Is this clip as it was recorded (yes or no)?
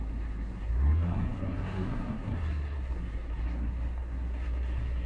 no